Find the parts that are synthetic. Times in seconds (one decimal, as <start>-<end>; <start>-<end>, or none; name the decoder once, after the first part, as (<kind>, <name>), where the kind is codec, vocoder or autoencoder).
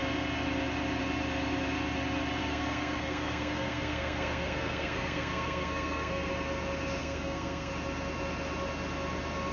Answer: 2.4-6.3 (codec, SNAC); 7.0-7.7